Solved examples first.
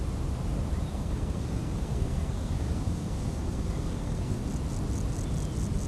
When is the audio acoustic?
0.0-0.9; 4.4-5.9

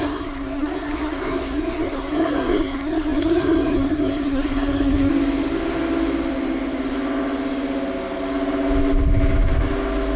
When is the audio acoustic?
5.1-10.2